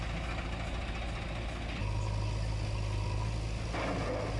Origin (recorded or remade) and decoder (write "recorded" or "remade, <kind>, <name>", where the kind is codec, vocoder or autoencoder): recorded